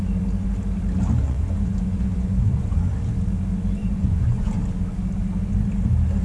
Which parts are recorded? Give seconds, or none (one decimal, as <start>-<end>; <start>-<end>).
0.0-1.2; 2.9-3.8; 4.5-6.2